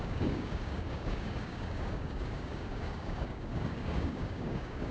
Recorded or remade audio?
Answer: remade